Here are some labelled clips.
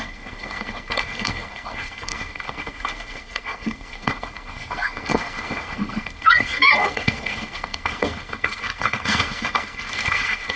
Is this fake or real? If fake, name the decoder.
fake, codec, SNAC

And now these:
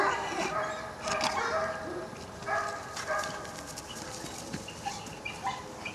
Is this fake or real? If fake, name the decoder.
real